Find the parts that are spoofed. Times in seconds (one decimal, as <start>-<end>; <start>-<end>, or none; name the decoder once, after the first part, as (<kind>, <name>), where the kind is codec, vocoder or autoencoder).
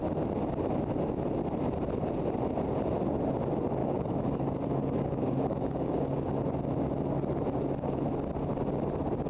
3.8-6.3 (codec, DAC)